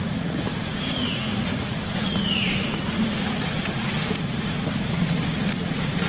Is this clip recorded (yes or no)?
no